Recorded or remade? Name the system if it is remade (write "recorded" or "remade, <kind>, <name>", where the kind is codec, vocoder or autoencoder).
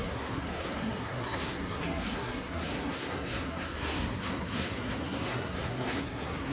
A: remade, codec, SNAC